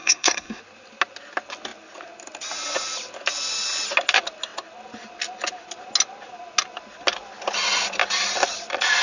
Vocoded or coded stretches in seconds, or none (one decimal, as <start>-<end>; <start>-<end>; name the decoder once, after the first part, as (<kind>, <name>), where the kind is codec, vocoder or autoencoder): 0.0-0.6 (codec, SNAC)